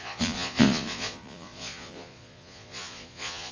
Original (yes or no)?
no